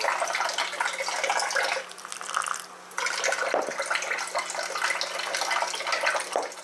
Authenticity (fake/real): real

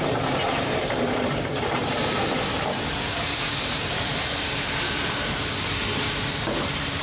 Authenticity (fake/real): fake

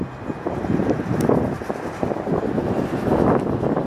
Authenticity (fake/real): real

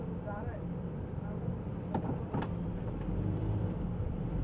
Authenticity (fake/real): fake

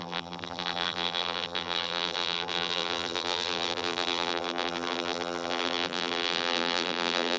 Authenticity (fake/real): fake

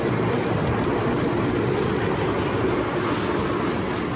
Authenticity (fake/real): real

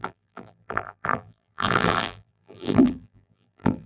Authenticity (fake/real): fake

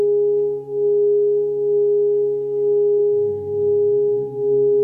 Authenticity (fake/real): real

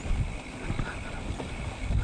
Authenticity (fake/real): real